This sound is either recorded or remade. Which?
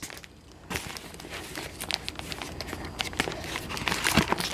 recorded